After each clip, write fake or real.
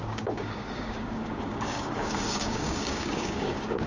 fake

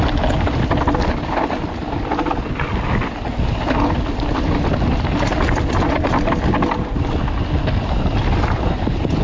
real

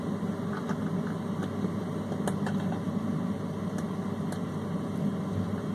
real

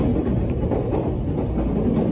real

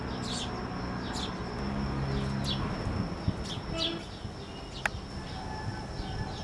real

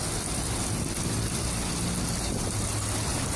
real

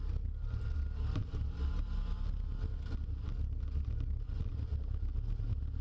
real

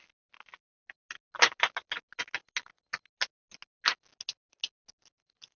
real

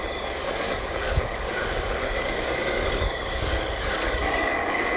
fake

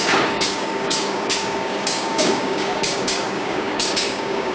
fake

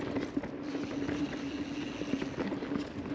real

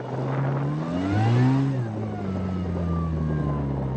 real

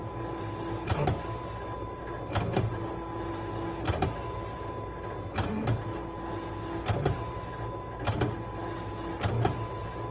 real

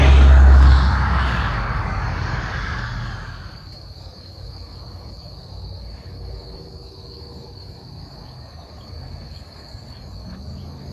fake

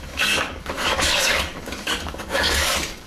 fake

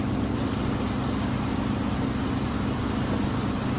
real